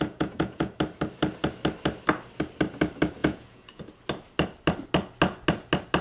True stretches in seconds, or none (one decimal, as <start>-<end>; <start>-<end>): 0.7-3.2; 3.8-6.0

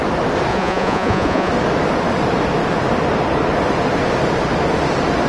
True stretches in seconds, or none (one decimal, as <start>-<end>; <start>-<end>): 0.0-0.5; 1.5-5.3

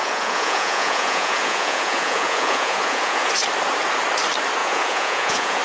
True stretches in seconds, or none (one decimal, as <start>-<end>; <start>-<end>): 3.3-4.6